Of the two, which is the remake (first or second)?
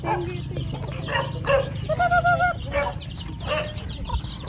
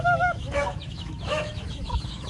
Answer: second